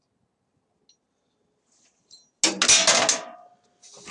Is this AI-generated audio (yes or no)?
no